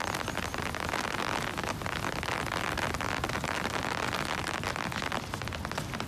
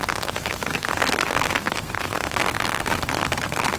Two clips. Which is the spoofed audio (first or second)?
second